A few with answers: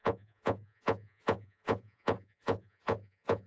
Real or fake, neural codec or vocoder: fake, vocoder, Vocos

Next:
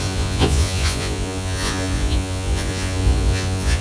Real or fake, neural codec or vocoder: fake, vocoder, Vocos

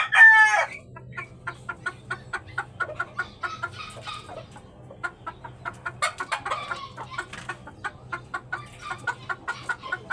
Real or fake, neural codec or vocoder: real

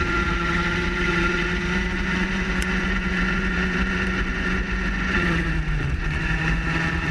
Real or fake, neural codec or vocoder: fake, vocoder, Vocos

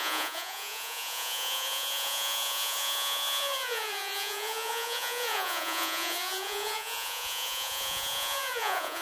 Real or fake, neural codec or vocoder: fake, vocoder, Vocos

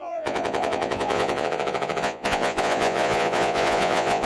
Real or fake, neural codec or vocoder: fake, vocoder, Vocos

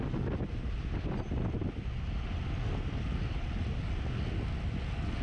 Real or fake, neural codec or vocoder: real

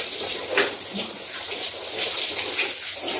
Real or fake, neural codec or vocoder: real